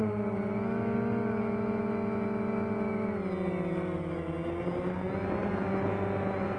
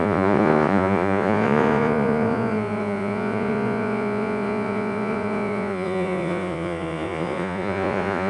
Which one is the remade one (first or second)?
second